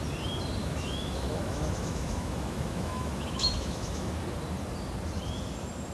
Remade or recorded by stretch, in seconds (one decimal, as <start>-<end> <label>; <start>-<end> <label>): 0.0-0.6 recorded; 0.6-4.1 remade; 4.1-5.9 recorded